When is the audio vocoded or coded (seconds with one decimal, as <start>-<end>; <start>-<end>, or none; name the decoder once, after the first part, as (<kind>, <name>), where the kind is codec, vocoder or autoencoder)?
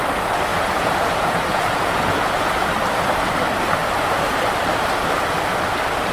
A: 0.5-2.7 (vocoder, Vocos)